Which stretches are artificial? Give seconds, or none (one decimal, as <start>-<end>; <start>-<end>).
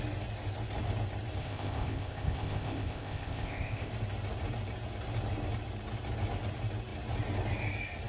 1.4-3.9